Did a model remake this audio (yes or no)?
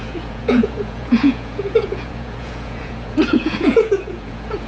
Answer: yes